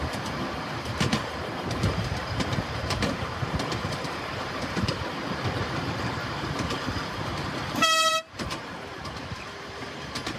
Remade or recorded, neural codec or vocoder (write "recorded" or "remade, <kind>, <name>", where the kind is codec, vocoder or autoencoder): remade, vocoder, BigVGAN v2